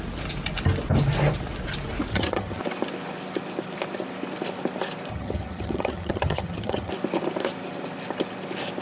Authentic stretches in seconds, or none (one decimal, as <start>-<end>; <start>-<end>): 0.0-2.1; 2.6-5.1; 6.9-8.8